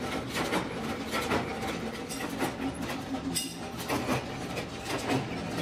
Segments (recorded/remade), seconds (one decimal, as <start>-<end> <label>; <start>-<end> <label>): 0.0-5.6 recorded